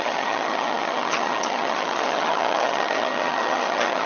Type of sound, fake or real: fake